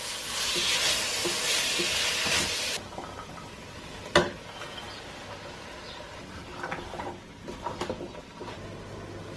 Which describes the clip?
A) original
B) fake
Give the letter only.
A